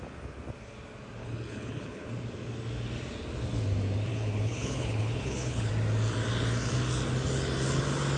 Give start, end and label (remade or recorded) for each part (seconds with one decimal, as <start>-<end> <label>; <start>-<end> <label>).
0.0-1.2 recorded; 1.2-2.1 remade; 2.1-4.1 recorded; 4.1-5.7 remade; 5.7-8.2 recorded